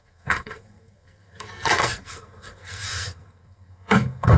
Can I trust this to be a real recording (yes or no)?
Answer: no